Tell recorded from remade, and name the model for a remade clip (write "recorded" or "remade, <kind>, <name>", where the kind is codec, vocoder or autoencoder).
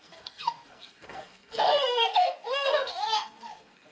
remade, codec, SNAC